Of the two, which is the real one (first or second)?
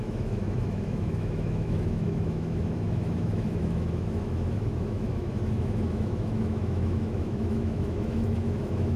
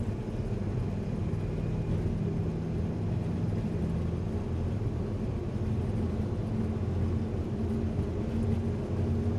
second